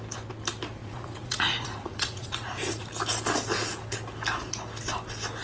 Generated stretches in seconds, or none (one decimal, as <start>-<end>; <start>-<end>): 0.8-2.9